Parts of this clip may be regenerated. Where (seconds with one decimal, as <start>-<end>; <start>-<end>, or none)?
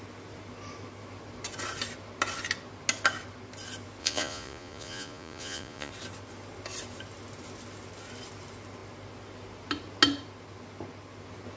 4.0-5.9